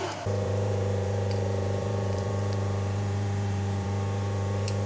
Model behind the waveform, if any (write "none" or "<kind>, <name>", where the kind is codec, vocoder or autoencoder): vocoder, BigVGAN v2